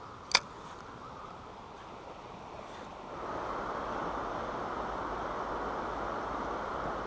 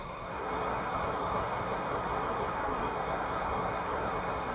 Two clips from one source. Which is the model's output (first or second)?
second